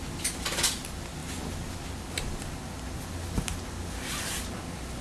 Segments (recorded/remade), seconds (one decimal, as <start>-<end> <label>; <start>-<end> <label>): 0.0-5.0 recorded